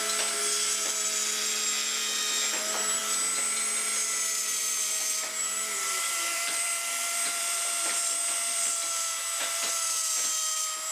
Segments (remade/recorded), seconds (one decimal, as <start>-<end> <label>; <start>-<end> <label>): 0.0-4.6 recorded; 4.6-8.7 remade; 8.7-10.9 recorded